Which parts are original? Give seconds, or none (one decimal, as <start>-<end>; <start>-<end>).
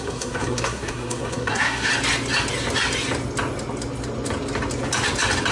1.9-5.5